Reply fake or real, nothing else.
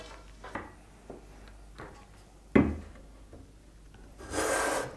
real